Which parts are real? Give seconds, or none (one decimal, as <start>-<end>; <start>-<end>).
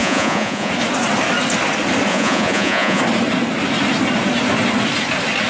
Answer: 0.7-2.1; 3.0-5.5